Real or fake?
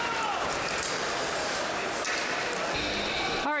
real